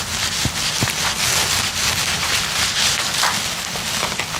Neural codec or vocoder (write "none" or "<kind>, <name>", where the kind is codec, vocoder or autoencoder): none